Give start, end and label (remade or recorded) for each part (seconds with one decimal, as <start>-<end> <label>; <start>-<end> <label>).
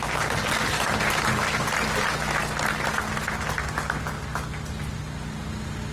0.0-5.9 recorded